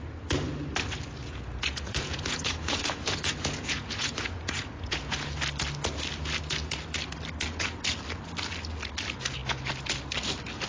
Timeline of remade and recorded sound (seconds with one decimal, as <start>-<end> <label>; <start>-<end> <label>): 0.0-1.2 recorded; 1.2-5.4 remade; 5.4-10.7 recorded

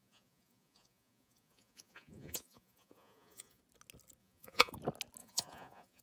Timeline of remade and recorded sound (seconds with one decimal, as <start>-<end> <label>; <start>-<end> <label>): 0.0-3.6 remade; 3.6-4.2 recorded; 4.2-4.7 remade; 4.7-5.2 recorded; 5.2-6.0 remade

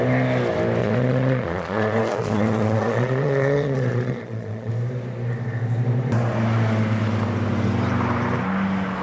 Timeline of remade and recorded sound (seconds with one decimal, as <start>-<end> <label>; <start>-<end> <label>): 0.0-0.8 recorded; 0.8-4.7 remade; 4.7-9.0 recorded

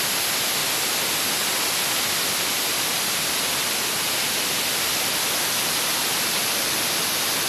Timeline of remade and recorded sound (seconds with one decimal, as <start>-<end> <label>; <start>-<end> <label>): 0.0-7.5 recorded